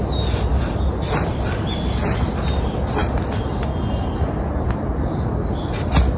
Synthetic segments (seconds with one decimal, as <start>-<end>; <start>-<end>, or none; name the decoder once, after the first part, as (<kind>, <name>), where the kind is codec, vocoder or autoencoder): none